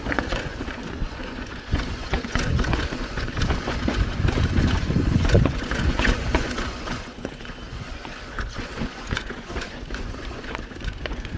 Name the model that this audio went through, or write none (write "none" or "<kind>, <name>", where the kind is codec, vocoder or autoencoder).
vocoder, Vocos